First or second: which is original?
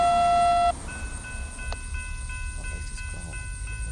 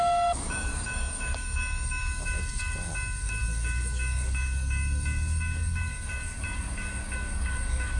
first